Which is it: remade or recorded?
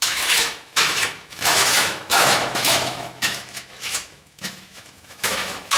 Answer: remade